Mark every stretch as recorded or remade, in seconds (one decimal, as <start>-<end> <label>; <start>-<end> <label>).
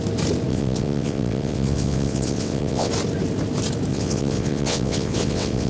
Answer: 0.0-0.5 recorded; 0.5-2.9 remade; 2.9-3.9 recorded; 3.9-5.7 remade